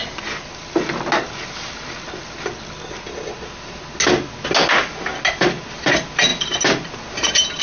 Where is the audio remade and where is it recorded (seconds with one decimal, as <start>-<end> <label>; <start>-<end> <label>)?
0.0-7.6 recorded